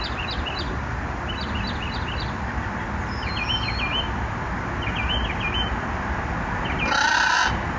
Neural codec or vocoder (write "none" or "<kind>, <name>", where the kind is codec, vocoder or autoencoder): none